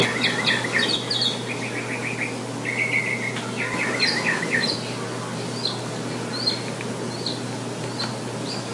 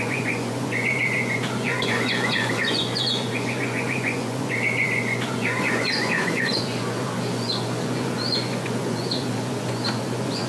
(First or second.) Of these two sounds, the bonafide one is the first